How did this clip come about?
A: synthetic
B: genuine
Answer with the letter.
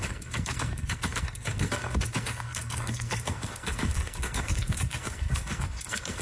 A